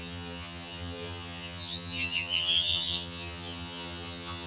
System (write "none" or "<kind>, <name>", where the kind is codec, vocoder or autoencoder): vocoder, HiFi-GAN